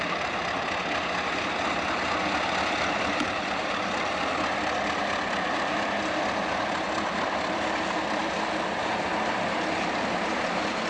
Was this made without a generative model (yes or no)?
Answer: no